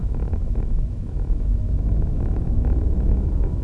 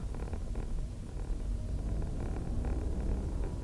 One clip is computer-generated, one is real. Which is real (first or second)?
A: second